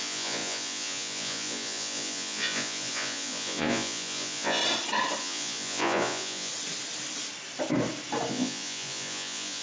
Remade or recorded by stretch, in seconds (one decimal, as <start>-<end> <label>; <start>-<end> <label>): 0.0-4.6 remade; 4.6-5.2 recorded; 5.2-6.5 remade; 6.5-8.3 recorded; 8.3-9.6 remade